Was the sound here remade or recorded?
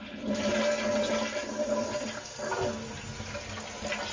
recorded